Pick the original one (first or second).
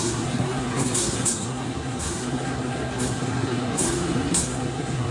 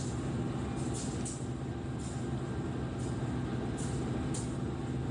second